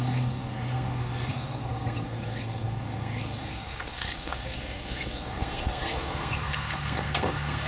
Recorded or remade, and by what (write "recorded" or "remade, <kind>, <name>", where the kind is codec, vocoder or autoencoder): remade, codec, SNAC